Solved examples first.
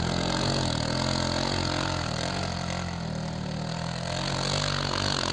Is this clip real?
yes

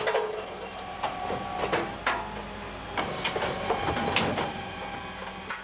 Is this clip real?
yes